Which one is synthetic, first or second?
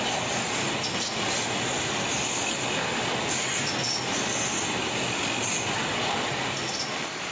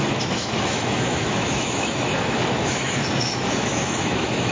second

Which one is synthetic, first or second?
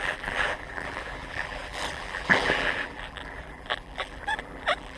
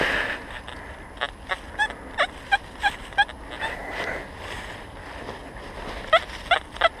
first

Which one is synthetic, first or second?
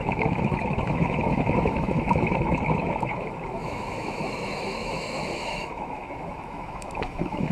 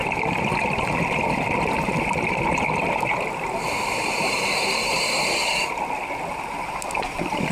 first